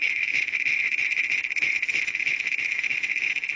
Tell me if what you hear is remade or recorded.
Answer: remade